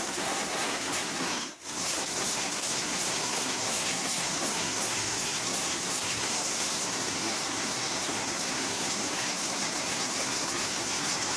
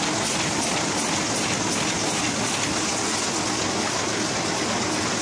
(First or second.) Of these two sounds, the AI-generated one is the first